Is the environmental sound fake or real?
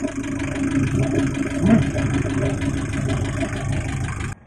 real